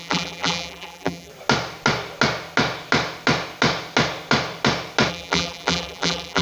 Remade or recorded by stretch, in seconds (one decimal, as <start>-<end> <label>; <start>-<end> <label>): 0.0-1.3 remade; 1.3-5.1 recorded; 5.1-6.4 remade